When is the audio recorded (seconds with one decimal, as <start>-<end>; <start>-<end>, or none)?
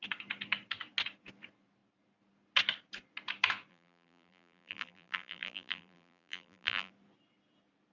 0.0-3.7; 6.9-7.9